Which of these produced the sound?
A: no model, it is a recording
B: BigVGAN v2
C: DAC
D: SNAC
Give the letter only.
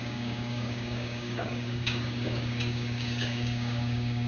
C